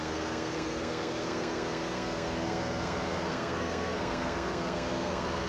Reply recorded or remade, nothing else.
remade